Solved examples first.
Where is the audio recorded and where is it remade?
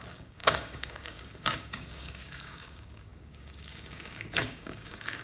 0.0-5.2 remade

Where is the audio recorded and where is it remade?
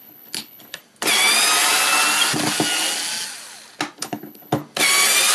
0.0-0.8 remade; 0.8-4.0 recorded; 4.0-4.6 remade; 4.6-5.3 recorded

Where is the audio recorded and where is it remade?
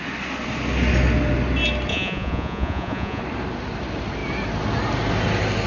0.0-1.9 recorded; 1.9-3.2 remade; 3.2-5.7 recorded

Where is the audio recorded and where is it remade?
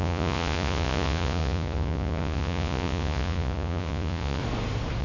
0.0-4.4 remade; 4.4-5.0 recorded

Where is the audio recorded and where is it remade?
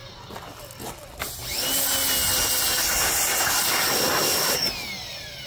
0.0-5.5 recorded